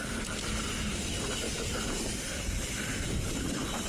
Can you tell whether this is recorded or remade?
recorded